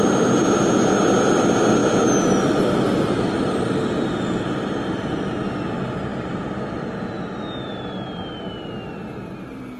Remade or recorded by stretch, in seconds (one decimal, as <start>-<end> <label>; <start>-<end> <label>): 0.0-9.8 recorded